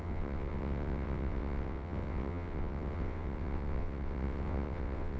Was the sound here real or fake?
fake